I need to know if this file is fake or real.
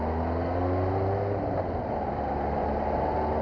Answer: real